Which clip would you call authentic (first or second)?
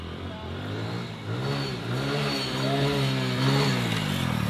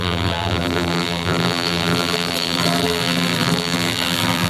first